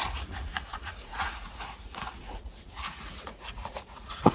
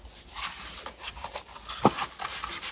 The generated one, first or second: first